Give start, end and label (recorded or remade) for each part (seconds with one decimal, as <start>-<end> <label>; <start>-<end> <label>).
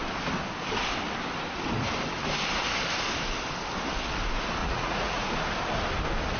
0.0-4.6 recorded; 4.6-5.3 remade; 5.3-6.4 recorded